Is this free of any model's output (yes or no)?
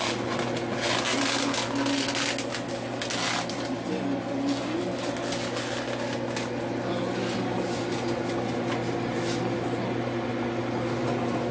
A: yes